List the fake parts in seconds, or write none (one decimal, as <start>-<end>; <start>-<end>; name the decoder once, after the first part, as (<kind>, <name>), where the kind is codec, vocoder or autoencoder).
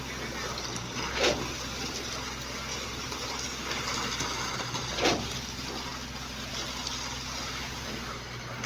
none